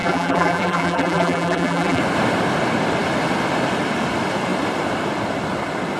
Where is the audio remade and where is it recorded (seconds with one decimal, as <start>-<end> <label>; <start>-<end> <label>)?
0.0-2.0 remade; 2.0-6.0 recorded

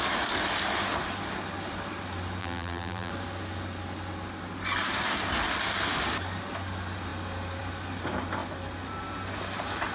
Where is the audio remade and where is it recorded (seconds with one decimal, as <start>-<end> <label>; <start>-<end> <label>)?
0.0-2.4 recorded; 2.4-3.1 remade; 3.1-9.9 recorded

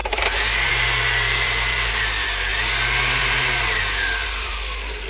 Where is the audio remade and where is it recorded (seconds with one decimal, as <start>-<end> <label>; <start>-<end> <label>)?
0.0-2.5 remade; 2.5-3.2 recorded; 3.2-5.1 remade

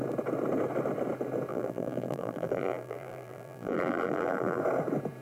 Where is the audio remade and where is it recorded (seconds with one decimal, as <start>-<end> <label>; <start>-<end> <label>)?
0.0-1.5 recorded; 1.5-4.6 remade; 4.6-5.2 recorded

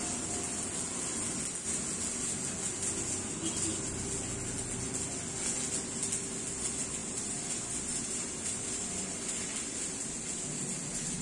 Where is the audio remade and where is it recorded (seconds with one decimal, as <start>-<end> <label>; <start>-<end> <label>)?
0.0-7.0 recorded; 7.0-9.8 remade; 9.8-11.2 recorded

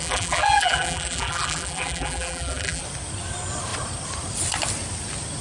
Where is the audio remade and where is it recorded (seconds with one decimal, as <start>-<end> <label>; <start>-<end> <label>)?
0.0-2.8 remade; 2.8-5.4 recorded

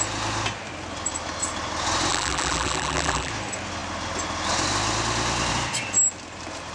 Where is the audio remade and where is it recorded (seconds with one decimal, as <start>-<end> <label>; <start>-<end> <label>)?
0.0-2.1 recorded; 2.1-3.3 remade; 3.3-6.7 recorded

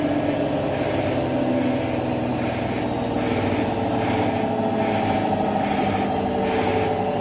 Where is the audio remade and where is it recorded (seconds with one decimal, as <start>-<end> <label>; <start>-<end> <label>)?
0.0-7.2 recorded